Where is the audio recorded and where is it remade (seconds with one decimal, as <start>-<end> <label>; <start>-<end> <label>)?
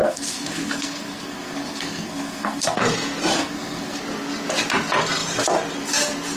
0.0-2.8 remade; 2.8-3.3 recorded; 3.3-4.0 remade; 4.0-6.4 recorded